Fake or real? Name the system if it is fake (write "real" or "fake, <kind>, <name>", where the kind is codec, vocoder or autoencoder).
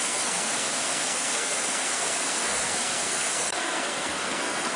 fake, codec, SNAC